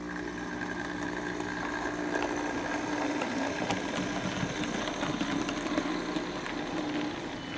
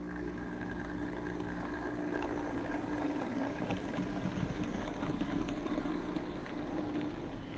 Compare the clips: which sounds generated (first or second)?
second